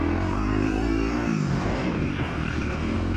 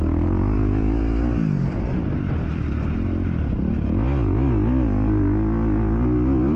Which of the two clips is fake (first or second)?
first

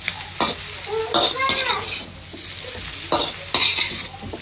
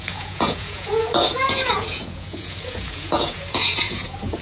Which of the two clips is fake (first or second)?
second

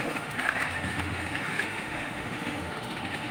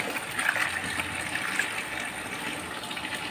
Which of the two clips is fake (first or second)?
first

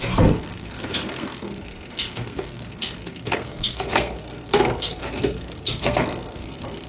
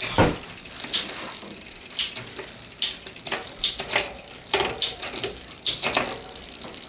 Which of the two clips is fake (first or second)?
first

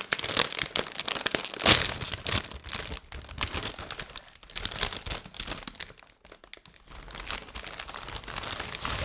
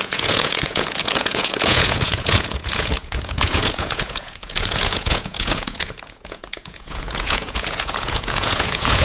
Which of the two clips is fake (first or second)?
second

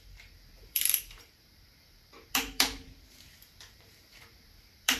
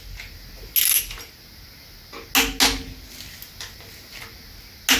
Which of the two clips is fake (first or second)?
first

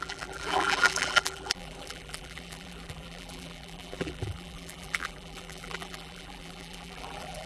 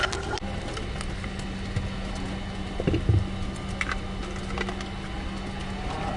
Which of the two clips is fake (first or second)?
first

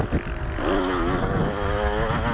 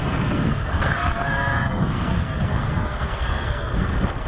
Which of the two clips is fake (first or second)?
second